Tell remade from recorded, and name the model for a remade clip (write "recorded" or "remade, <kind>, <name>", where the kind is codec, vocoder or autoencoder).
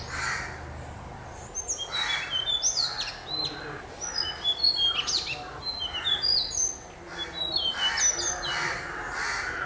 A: recorded